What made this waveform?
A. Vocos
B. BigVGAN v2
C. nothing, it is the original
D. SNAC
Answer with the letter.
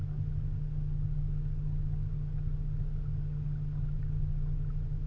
C